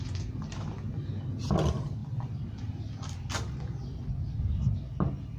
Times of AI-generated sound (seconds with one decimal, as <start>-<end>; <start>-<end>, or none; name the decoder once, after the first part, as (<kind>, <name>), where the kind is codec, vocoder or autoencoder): none